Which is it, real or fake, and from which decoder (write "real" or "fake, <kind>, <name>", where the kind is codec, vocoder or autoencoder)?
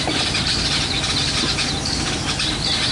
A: real